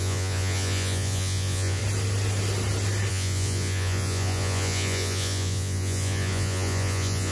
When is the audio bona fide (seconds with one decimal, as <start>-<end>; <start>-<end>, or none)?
1.8-3.1